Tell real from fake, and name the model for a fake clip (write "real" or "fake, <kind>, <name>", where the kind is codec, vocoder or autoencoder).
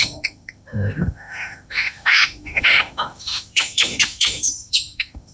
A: fake, autoencoder, DAC-VAE